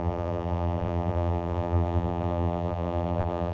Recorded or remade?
remade